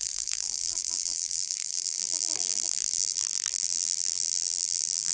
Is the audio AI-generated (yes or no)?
yes